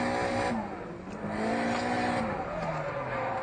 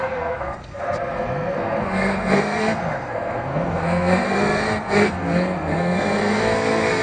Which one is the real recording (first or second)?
first